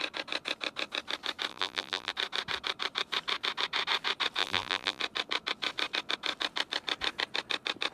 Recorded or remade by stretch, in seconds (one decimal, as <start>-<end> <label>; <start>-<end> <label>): 0.0-1.5 recorded; 1.5-2.1 remade; 2.1-4.4 recorded; 4.4-5.0 remade; 5.0-7.9 recorded

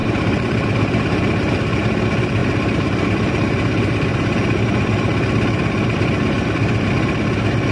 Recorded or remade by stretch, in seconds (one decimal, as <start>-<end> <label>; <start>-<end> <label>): 0.0-2.0 remade; 2.0-2.4 recorded; 2.4-6.9 remade; 6.9-7.7 recorded

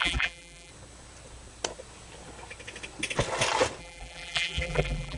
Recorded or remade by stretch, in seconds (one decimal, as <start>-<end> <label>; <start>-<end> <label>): 0.0-0.7 remade; 0.7-3.8 recorded; 3.8-5.2 remade